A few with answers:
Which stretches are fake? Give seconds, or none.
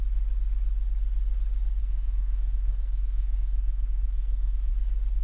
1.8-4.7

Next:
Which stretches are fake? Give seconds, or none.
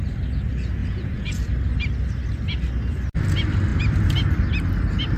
0.8-1.5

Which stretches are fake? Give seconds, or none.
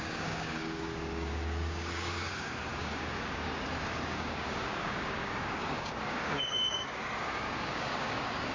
0.0-8.5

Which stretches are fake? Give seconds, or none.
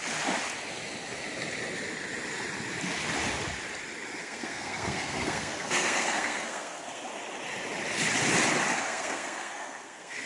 4.2-7.0; 8.7-10.3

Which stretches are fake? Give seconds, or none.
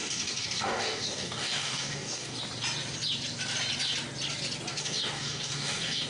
0.0-2.4; 4.7-6.1